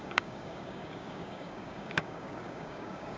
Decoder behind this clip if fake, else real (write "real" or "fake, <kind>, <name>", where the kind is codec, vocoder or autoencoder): fake, codec, DAC